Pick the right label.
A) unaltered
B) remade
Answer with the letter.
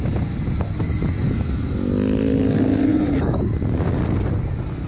A